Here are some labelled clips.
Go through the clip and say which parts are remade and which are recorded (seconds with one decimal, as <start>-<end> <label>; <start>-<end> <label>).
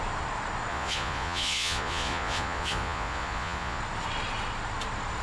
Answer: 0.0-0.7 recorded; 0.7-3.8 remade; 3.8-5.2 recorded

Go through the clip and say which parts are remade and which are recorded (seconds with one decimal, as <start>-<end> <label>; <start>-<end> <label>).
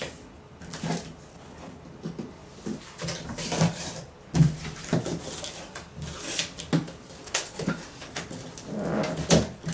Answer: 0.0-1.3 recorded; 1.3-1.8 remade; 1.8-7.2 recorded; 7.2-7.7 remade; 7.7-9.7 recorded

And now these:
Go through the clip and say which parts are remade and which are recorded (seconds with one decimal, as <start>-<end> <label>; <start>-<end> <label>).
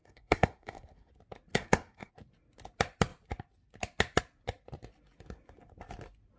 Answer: 0.0-1.1 remade; 1.1-1.5 recorded; 1.5-2.1 remade; 2.1-6.4 recorded